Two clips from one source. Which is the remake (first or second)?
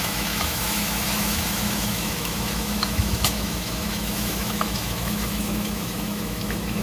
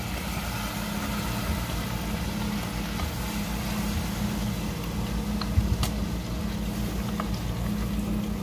first